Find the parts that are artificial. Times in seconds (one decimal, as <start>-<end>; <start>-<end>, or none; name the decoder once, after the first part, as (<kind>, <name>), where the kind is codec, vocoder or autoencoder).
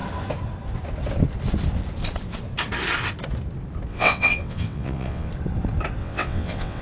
3.9-5.3 (vocoder, WaveNeXt); 6.0-6.8